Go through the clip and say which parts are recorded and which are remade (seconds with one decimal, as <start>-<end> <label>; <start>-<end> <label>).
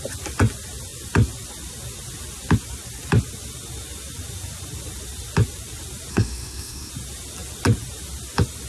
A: 0.0-6.1 recorded; 6.1-6.9 remade; 6.9-8.7 recorded